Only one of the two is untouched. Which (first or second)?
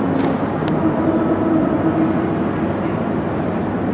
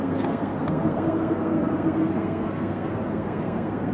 first